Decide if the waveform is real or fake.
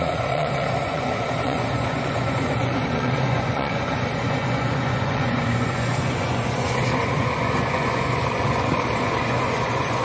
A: fake